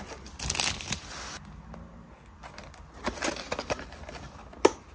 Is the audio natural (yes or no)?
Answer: yes